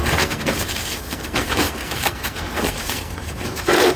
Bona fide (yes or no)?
no